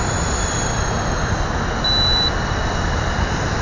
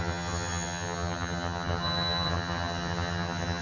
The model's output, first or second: second